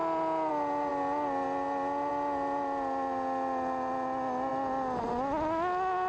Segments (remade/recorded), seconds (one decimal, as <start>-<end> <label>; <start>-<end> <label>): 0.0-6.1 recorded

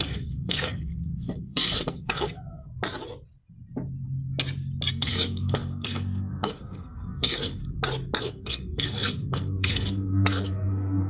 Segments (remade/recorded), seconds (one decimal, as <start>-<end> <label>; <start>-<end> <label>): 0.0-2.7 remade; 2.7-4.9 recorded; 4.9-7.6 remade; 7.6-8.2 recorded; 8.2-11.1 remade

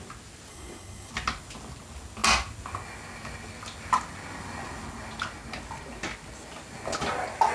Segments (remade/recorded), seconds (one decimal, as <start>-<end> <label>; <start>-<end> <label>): 0.0-0.5 recorded; 0.5-1.1 remade; 1.1-7.5 recorded

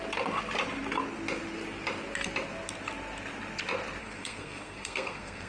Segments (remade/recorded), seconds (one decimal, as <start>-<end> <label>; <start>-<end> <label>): 0.0-4.0 recorded; 4.0-5.5 remade

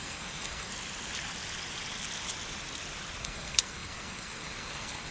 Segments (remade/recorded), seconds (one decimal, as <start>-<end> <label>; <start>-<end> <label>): 0.0-0.7 remade; 0.7-3.2 recorded; 3.2-5.1 remade

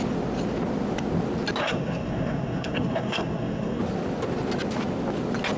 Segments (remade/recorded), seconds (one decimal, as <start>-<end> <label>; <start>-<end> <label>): 0.0-1.6 recorded; 1.6-3.8 remade; 3.8-5.6 recorded

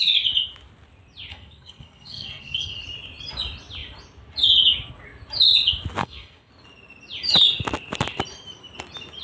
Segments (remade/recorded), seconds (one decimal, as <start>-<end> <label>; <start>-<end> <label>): 0.0-1.3 recorded; 1.3-2.8 remade; 2.8-6.0 recorded; 6.0-6.5 remade; 6.5-9.2 recorded